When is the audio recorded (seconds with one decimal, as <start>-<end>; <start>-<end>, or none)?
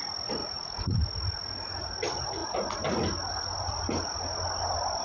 0.0-0.4; 1.0-5.0